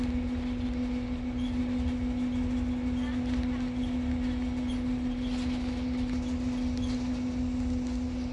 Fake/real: real